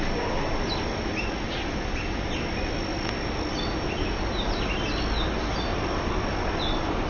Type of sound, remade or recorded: recorded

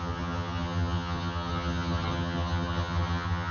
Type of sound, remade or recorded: remade